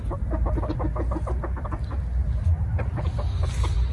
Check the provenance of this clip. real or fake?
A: real